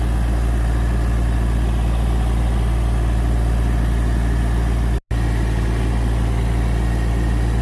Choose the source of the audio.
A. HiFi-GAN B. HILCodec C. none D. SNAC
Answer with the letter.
C